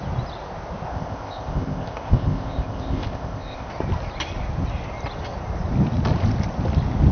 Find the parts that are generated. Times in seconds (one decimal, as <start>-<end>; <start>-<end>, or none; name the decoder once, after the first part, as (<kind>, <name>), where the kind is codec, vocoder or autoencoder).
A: 0.9-3.7 (codec, ZipCodec)